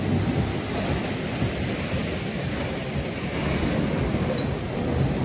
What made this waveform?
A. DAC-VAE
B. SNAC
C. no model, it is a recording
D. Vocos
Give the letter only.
C